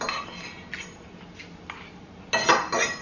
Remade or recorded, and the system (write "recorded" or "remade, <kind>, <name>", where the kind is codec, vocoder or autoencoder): recorded